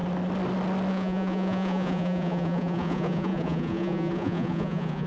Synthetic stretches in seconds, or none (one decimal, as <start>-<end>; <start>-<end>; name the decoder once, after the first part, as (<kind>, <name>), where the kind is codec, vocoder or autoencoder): 0.9-5.1 (vocoder, Vocos)